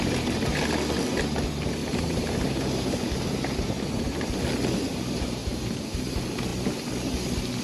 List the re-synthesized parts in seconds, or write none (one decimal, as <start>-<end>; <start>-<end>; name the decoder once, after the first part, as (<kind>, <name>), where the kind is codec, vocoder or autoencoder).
1.8-4.4 (vocoder, BigVGAN v2); 5.4-6.1